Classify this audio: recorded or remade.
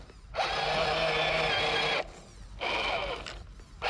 recorded